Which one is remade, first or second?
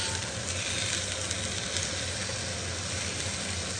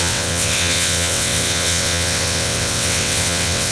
second